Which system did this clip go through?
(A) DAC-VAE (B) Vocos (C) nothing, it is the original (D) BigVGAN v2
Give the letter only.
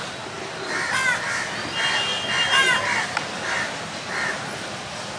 C